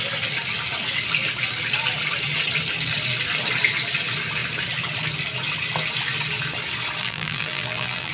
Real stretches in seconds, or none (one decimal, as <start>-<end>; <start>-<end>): 0.0-7.0